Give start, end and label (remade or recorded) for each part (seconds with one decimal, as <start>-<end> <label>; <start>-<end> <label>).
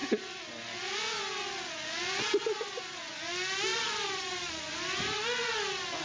0.0-1.2 remade; 1.2-3.7 recorded; 3.7-4.5 remade; 4.5-6.0 recorded